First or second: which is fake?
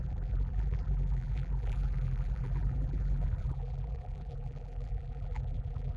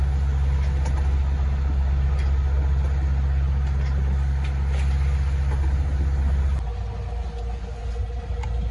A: first